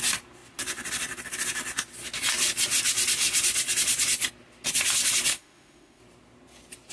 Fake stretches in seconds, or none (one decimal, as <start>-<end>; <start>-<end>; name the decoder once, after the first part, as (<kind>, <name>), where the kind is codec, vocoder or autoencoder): 5.3-6.0 (autoencoder, DAC-VAE)